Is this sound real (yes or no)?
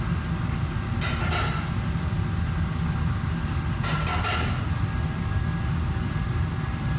yes